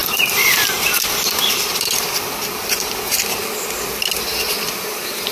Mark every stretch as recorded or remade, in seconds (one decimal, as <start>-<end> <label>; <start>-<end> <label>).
0.0-5.3 recorded